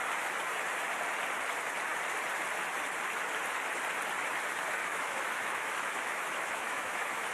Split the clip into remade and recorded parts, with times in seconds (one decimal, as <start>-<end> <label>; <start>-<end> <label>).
0.0-4.8 recorded; 4.8-7.3 remade